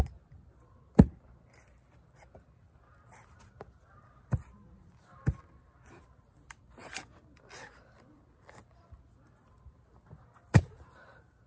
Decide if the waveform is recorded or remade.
recorded